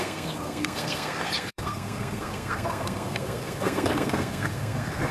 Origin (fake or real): fake